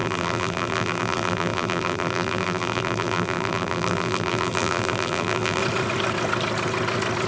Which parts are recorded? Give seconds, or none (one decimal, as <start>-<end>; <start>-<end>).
5.6-7.3